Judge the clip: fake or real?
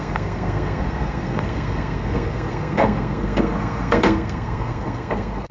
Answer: fake